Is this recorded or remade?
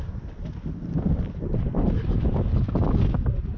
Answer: recorded